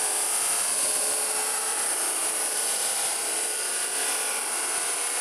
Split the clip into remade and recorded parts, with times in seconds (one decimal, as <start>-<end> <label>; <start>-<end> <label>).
0.0-1.4 recorded; 1.4-3.6 remade; 3.6-5.2 recorded